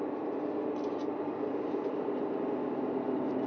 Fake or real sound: real